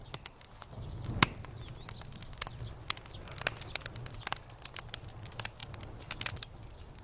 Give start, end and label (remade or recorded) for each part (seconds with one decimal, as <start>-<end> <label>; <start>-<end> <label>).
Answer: 0.0-7.0 recorded